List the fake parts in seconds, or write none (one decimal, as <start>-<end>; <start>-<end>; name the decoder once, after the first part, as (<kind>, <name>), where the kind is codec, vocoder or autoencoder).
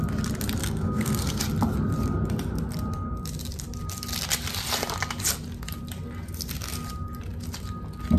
0.6-1.4 (codec, SNAC)